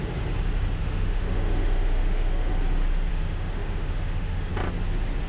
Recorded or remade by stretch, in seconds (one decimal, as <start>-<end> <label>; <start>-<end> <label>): 0.0-0.8 recorded; 0.8-2.5 remade; 2.5-3.1 recorded; 3.1-4.5 remade; 4.5-5.3 recorded